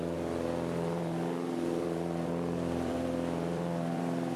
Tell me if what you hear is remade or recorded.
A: remade